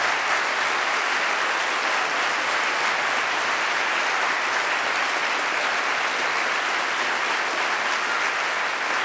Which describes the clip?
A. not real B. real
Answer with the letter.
B